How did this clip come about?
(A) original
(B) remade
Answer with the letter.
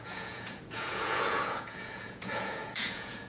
B